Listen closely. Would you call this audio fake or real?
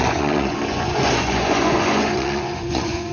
fake